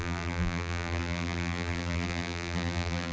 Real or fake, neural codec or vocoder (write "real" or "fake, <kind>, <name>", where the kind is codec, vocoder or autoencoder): fake, vocoder, BigVGAN v2